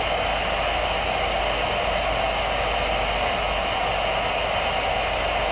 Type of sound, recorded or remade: recorded